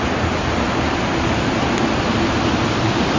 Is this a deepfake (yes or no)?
yes